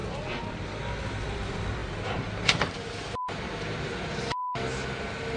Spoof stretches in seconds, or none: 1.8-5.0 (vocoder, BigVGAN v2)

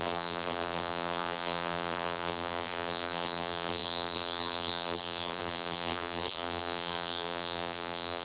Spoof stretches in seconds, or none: 0.0-8.2 (vocoder, BigVGAN v2)

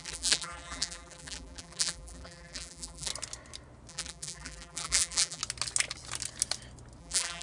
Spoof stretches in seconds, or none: 0.0-3.1 (vocoder, BigVGAN v2); 3.9-5.4; 7.0-7.4

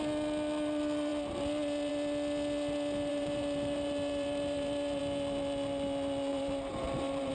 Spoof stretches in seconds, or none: 3.1-5.0 (vocoder, BigVGAN v2); 6.3-7.3